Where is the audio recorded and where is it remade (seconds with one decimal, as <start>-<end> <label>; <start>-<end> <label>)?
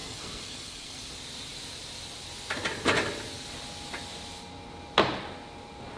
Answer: 0.0-1.1 remade; 1.1-6.0 recorded